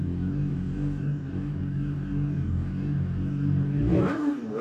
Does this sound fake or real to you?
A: fake